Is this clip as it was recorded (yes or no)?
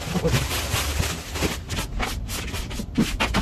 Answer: yes